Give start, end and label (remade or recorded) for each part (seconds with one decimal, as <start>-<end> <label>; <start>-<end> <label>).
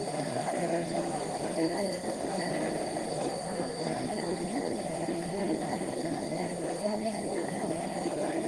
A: 0.0-2.5 remade; 2.5-3.1 recorded; 3.1-8.5 remade